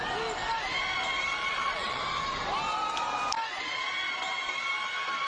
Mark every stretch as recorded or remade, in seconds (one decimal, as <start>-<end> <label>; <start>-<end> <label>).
0.0-1.4 recorded; 1.4-2.0 remade; 2.0-5.3 recorded